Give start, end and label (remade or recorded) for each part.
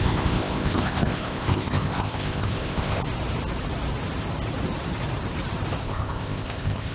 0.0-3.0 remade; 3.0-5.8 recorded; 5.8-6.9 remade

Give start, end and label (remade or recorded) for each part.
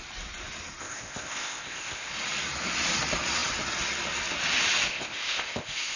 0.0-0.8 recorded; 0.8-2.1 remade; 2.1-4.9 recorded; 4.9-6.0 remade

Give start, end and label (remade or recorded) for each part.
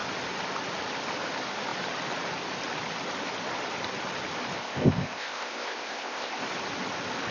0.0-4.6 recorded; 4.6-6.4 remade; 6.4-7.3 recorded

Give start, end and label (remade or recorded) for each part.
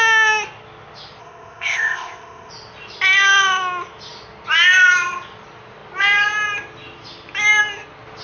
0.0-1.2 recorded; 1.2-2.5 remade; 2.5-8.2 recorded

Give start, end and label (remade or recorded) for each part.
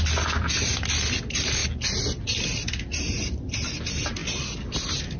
0.0-5.2 recorded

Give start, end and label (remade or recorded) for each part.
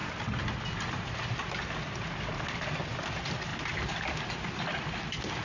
0.0-5.4 recorded